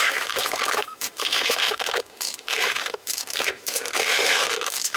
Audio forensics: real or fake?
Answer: fake